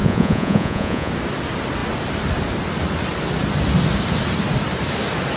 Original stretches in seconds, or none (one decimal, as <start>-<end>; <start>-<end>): 1.1-5.4